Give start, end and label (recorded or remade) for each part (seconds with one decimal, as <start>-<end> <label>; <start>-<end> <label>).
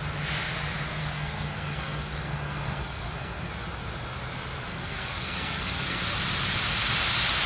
0.0-1.0 recorded; 1.0-3.5 remade; 3.5-4.7 recorded; 4.7-6.0 remade; 6.0-7.5 recorded